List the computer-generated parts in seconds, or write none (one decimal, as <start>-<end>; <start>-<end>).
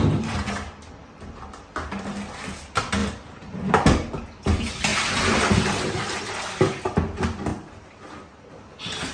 none